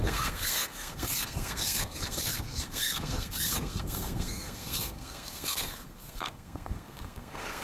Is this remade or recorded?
remade